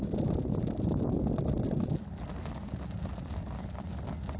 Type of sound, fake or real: real